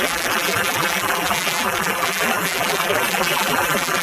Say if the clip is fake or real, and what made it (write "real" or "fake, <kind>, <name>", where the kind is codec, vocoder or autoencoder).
fake, vocoder, BigVGAN v2